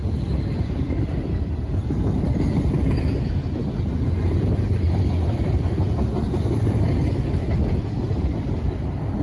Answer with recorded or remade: recorded